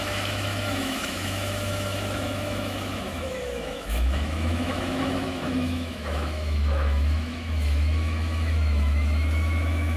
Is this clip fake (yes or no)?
yes